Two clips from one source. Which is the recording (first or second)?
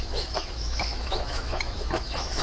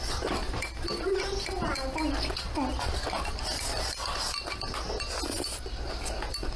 second